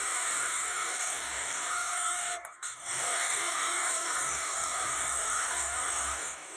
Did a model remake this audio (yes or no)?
yes